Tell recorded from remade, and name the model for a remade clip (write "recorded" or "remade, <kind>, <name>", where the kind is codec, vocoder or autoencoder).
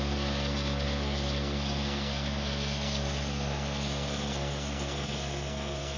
remade, codec, SNAC